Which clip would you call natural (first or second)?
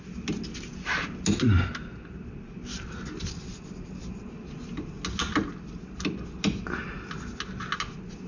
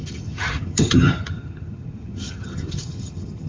first